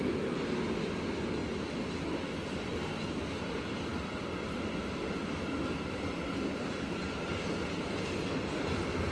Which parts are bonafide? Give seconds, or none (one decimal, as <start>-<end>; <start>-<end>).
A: 0.0-9.1